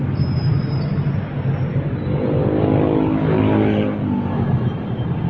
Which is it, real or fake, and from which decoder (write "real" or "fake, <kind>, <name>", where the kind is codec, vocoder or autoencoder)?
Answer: real